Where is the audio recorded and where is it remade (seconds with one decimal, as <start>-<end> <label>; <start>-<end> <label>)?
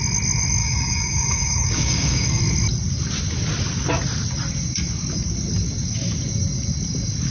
0.0-0.6 recorded; 0.6-2.4 remade; 2.4-7.3 recorded